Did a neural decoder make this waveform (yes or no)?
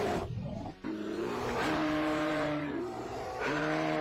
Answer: yes